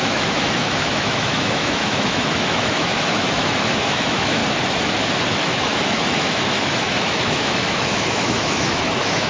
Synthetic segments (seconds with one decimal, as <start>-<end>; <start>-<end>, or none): 0.0-4.4; 5.3-9.3